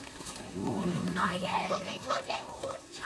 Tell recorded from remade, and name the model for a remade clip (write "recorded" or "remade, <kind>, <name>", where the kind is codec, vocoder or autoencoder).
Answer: remade, codec, SNAC